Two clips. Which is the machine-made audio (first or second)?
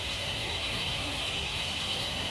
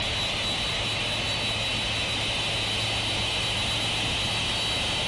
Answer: first